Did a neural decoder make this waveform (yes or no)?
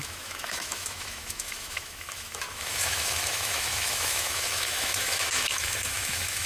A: yes